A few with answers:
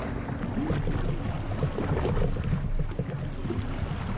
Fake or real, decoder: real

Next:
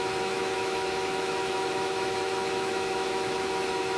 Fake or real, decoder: fake, autoencoder, DAC-VAE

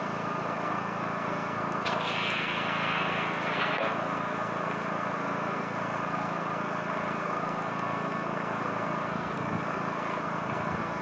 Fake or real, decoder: fake, codec, SNAC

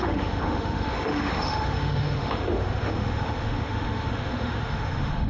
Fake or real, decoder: fake, autoencoder, DAC-VAE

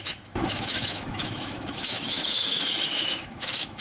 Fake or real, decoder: fake, autoencoder, DAC-VAE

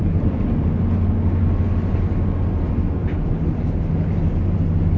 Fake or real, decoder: real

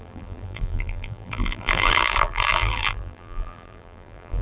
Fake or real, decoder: fake, vocoder, BigVGAN v2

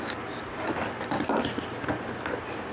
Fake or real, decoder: real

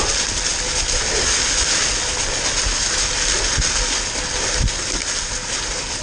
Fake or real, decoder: real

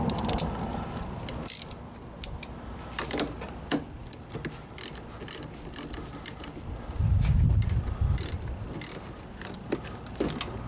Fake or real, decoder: real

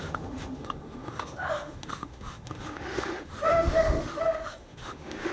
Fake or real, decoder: fake, autoencoder, DAC-VAE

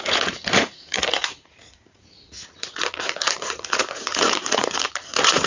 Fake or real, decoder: fake, vocoder, Vocos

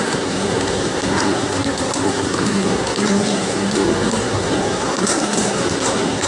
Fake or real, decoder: fake, codec, SNAC